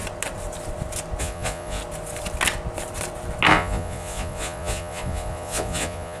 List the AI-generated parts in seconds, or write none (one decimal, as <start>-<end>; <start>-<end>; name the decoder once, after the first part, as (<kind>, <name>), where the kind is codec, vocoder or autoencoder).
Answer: 1.2-1.8 (vocoder, Vocos); 3.5-6.2

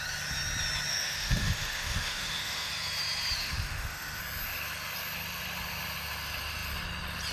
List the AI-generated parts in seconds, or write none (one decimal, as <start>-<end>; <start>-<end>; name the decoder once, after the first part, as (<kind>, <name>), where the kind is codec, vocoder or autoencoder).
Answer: 0.9-2.7 (autoencoder, DAC-VAE); 3.4-4.2

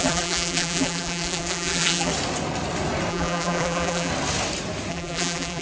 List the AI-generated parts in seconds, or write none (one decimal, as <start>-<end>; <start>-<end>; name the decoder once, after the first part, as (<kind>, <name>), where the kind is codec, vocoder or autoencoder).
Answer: 0.0-2.1 (vocoder, BigVGAN v2); 3.1-4.1; 4.9-5.6